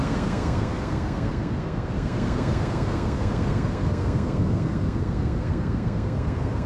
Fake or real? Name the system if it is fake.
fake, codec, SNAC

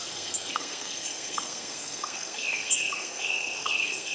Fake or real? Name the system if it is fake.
fake, codec, SNAC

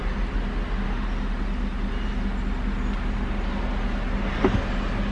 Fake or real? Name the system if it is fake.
real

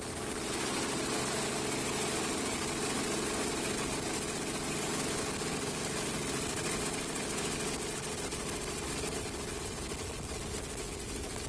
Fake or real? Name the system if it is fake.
real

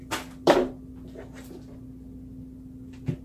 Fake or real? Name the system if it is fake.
real